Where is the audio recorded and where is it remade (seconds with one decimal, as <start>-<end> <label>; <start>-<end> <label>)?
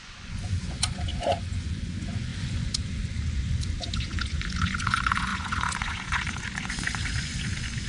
0.0-7.9 remade